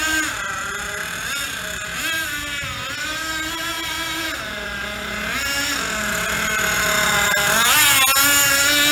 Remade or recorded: recorded